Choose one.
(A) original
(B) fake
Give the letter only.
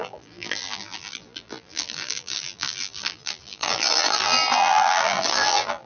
B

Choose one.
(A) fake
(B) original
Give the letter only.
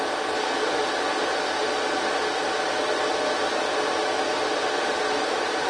B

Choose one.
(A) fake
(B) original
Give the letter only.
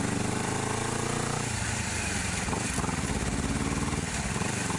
A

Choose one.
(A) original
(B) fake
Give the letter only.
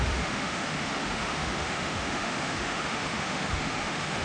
B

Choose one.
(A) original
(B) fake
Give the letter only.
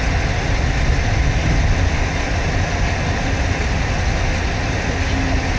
A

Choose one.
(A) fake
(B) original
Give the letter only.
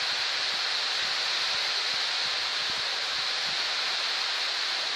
B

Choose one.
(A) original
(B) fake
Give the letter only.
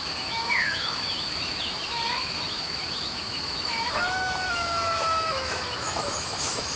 B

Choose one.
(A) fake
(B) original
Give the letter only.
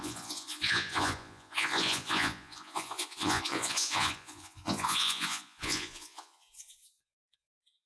A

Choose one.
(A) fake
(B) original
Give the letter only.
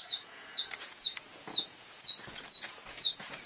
A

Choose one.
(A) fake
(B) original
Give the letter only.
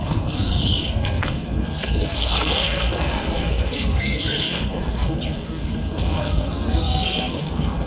A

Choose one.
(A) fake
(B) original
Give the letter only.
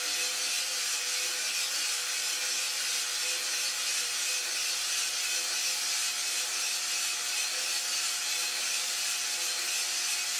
B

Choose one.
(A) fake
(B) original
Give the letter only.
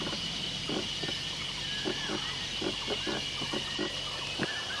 B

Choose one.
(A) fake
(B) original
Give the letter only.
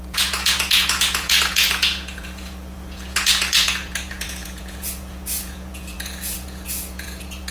A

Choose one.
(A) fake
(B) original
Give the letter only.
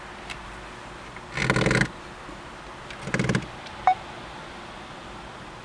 B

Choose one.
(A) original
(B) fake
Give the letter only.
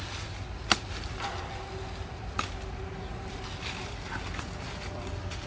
A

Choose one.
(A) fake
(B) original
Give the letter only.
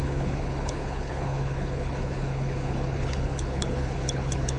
A